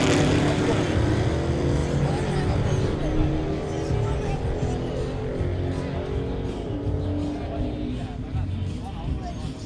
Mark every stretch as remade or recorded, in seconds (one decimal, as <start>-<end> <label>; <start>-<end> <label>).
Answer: 0.0-9.7 recorded

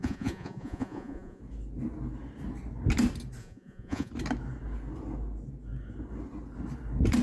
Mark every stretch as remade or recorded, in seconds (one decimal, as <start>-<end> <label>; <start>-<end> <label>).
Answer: 0.0-1.4 remade; 1.4-3.4 recorded; 3.4-4.1 remade; 4.1-7.2 recorded